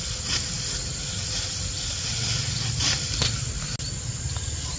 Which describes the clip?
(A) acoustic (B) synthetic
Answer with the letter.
A